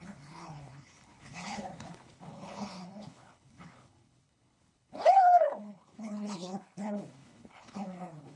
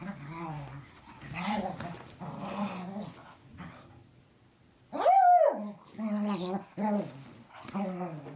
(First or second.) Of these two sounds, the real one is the second